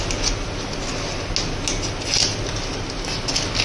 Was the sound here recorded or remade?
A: recorded